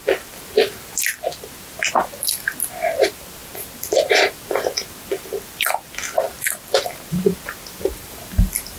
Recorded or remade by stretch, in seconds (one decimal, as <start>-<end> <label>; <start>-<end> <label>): 0.0-8.0 recorded; 8.0-8.8 remade